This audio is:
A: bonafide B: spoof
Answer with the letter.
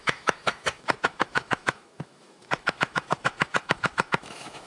B